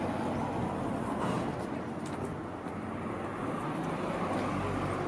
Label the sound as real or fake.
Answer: real